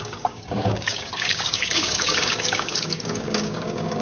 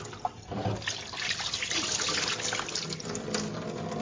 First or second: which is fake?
first